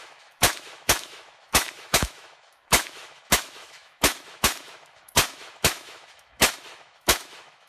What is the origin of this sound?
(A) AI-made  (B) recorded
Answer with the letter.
A